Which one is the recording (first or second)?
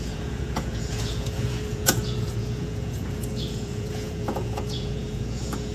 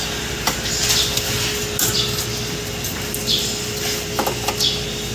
second